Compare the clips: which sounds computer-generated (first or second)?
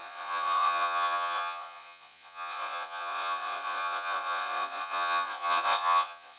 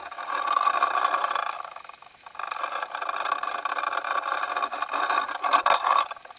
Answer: first